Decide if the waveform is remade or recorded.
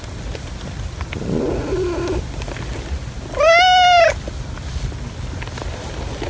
recorded